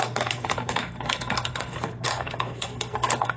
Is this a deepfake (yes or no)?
yes